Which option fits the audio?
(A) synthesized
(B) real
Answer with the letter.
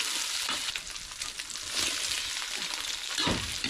B